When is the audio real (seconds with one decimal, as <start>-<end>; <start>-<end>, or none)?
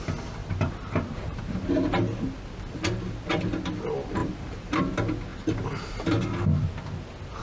0.0-0.4; 1.4-4.2; 4.8-7.4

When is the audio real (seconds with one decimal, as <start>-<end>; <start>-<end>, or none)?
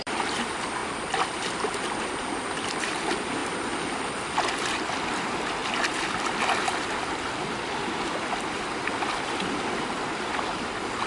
0.8-1.8; 5.6-9.9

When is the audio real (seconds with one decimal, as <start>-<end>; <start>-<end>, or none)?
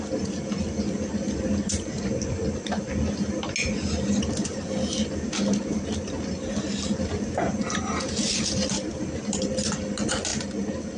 0.0-11.0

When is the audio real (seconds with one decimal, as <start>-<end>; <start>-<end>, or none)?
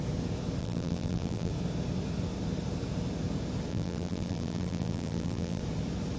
0.0-0.6; 1.5-3.7; 5.6-6.2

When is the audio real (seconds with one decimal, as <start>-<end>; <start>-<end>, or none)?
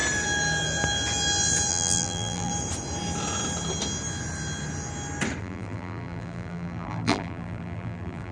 0.0-1.7; 2.5-5.4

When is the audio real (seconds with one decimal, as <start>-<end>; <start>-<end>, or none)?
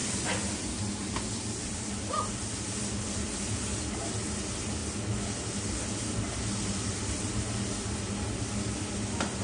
3.9-9.4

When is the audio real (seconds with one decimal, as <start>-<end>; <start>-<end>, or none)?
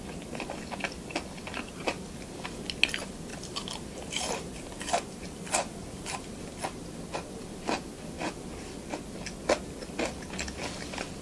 0.0-3.3; 6.4-11.2